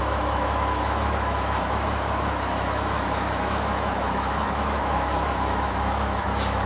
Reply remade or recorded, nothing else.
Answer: remade